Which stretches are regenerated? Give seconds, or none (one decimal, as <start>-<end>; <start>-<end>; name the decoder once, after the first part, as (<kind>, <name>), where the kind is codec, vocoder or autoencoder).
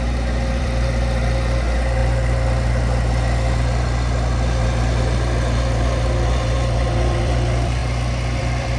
0.0-7.8 (vocoder, BigVGAN v2); 8.4-8.8